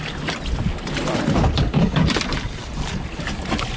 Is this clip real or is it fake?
real